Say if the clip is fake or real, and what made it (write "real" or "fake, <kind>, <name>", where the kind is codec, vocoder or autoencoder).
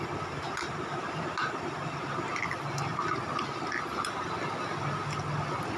real